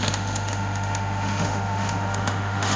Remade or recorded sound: remade